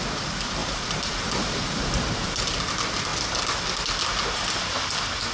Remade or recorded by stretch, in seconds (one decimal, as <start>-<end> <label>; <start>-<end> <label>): 0.0-0.6 recorded; 0.6-2.4 remade; 2.4-5.3 recorded